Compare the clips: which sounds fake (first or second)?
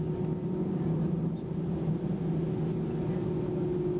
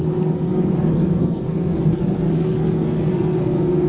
second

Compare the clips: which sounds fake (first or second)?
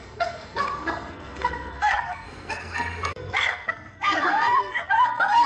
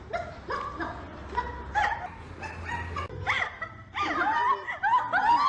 first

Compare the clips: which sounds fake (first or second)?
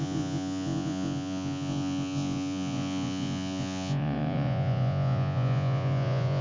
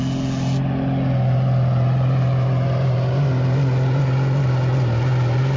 first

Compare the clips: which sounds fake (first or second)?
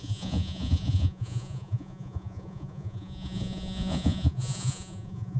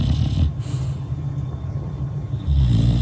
first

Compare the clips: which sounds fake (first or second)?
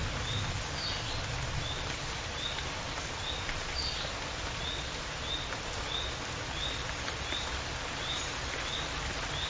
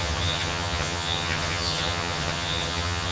second